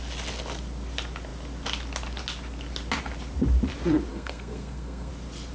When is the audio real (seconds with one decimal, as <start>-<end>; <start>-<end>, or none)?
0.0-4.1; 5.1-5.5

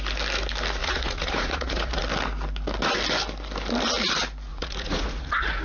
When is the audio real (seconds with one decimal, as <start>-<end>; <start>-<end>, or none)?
0.0-0.8; 2.0-4.5

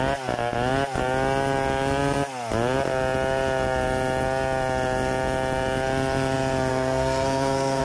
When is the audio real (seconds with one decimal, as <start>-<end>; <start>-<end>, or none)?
0.0-6.7